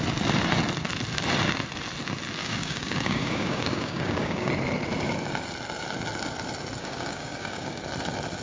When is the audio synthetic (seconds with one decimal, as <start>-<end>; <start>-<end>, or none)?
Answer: 2.4-4.5; 6.8-7.8